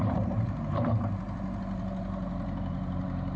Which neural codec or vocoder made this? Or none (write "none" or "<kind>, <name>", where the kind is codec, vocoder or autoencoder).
vocoder, BigVGAN v2